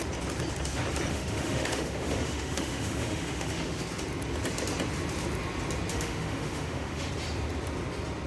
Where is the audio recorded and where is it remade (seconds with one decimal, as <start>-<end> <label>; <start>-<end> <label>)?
0.0-1.1 recorded; 1.1-3.8 remade; 3.8-5.9 recorded; 5.9-7.1 remade; 7.1-8.3 recorded